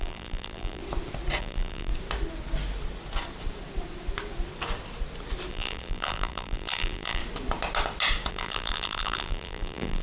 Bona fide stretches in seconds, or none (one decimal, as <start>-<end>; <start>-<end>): 0.8-1.4; 1.9-5.5; 7.2-8.3